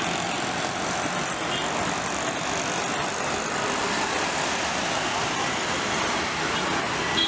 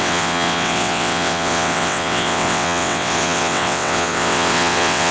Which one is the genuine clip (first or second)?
first